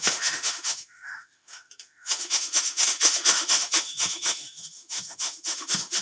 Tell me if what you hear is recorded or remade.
remade